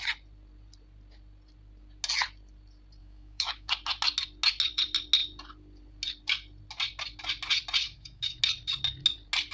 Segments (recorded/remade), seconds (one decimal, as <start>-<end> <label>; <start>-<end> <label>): 0.0-3.0 recorded; 3.0-3.7 remade; 3.7-7.8 recorded; 7.8-8.4 remade; 8.4-9.5 recorded